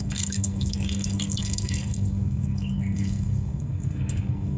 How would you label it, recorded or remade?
remade